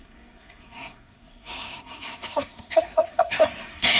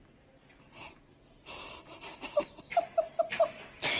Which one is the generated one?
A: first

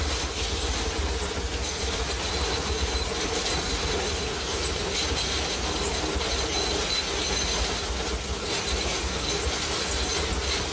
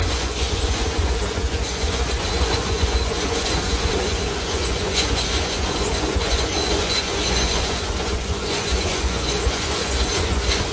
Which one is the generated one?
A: second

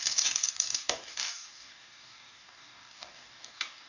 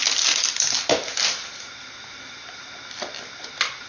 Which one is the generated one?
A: first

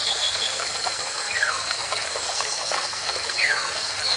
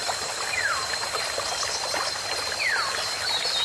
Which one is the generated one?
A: first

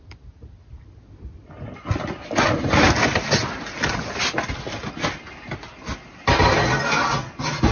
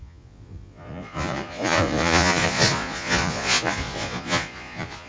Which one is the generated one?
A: second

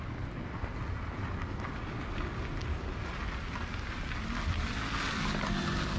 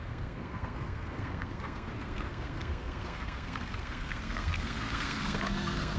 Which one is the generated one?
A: second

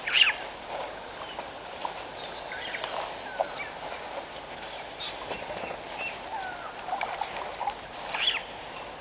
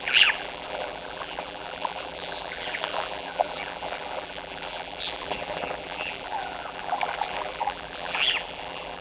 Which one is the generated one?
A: second